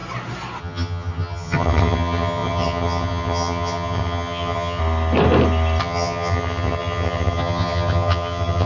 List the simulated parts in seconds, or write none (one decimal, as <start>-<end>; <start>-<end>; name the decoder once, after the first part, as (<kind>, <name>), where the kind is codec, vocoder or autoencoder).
0.6-4.8 (vocoder, HiFi-GAN); 5.8-8.7